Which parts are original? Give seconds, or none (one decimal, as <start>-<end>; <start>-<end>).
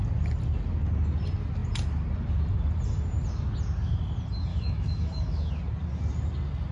0.0-4.5; 5.5-6.7